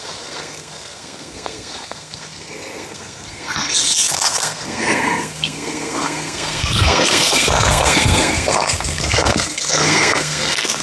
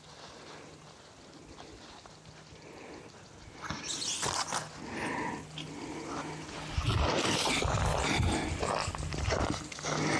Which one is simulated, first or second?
first